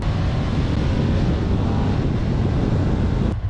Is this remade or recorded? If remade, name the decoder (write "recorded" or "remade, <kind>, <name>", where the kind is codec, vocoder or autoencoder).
recorded